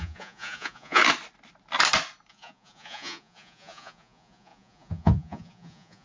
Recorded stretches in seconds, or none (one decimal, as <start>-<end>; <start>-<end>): 1.0-2.3